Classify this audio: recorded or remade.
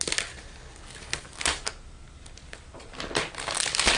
recorded